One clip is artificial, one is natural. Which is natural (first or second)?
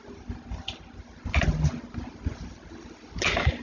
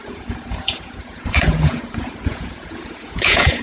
first